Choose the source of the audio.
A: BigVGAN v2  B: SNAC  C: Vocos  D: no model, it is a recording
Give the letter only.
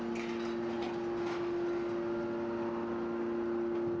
D